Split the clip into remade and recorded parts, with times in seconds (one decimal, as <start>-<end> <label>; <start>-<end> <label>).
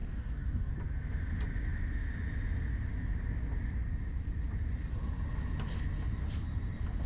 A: 0.0-0.7 remade; 0.7-7.1 recorded